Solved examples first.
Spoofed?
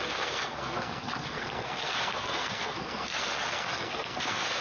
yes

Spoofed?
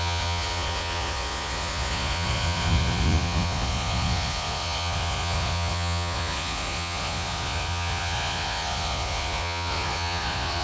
yes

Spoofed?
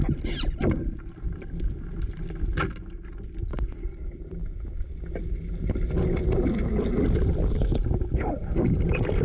no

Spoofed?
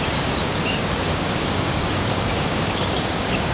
yes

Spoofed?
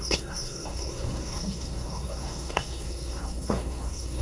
yes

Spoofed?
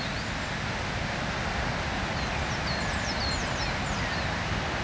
no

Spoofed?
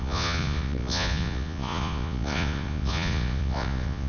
yes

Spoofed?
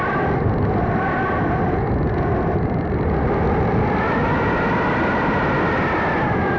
no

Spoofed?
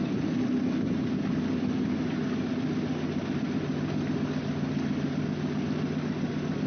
no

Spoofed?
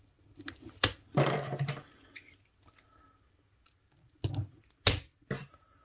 no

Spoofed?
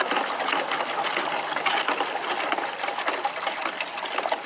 no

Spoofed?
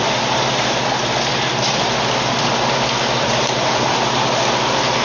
no